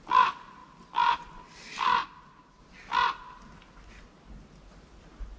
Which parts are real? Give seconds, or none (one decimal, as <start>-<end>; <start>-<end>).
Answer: 0.0-5.4